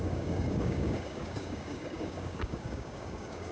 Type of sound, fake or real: fake